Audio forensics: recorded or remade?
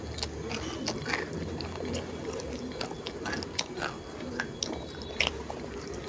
recorded